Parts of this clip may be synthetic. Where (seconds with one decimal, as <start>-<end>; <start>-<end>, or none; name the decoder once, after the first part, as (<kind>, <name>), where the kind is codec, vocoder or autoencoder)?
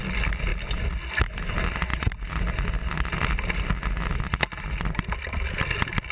none